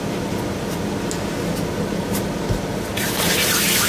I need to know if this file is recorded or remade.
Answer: recorded